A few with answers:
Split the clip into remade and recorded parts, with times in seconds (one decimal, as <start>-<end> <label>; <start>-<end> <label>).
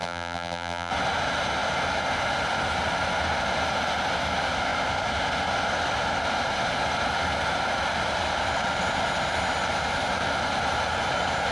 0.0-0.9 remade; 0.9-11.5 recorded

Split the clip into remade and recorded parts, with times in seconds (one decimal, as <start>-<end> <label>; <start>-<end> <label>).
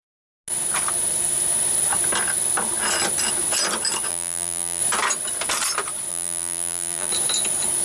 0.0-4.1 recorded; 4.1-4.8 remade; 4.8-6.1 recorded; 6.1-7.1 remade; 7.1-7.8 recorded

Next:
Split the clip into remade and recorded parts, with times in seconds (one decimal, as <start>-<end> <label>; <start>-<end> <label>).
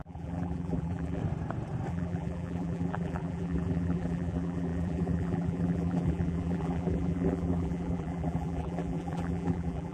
0.0-1.2 remade; 1.2-1.9 recorded; 1.9-9.9 remade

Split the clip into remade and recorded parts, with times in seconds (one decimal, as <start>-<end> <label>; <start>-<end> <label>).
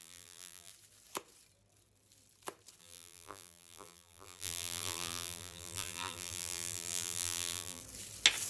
0.0-0.7 remade; 0.7-2.8 recorded; 2.8-7.8 remade; 7.8-8.5 recorded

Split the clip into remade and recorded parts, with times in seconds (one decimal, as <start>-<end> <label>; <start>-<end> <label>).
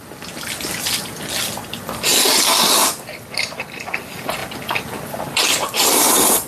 0.0-2.1 recorded; 2.1-3.6 remade; 3.6-6.5 recorded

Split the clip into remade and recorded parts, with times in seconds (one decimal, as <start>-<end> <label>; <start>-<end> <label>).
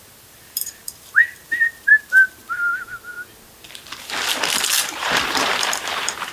0.0-1.4 remade; 1.4-1.9 recorded; 1.9-2.4 remade; 2.4-4.8 recorded; 4.8-6.3 remade